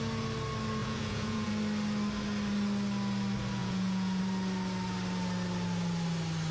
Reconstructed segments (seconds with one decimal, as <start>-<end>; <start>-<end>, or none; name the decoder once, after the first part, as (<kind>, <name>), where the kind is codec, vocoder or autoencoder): 0.8-1.5 (vocoder, Vocos); 3.6-4.2